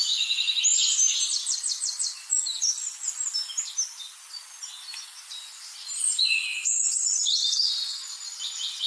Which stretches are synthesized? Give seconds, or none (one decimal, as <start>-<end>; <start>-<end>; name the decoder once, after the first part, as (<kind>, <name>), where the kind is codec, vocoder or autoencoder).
2.3-3.2 (vocoder, Vocos)